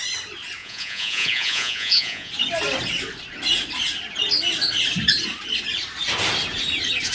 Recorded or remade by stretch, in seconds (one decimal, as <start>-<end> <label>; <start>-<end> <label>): 0.0-0.6 recorded; 0.6-2.3 remade; 2.3-7.1 recorded